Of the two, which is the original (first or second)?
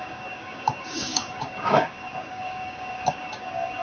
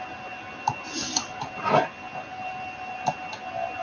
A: second